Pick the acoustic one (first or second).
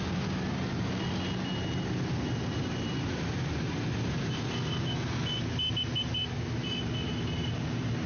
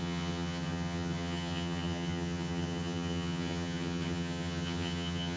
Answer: first